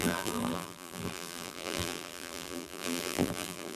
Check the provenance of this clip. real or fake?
fake